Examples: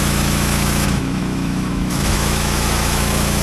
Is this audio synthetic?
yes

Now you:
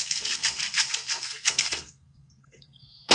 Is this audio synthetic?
yes